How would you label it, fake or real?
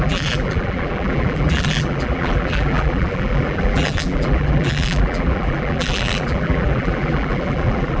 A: fake